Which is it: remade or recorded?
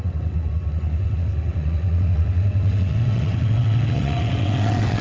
remade